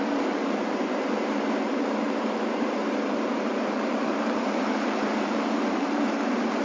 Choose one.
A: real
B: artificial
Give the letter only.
B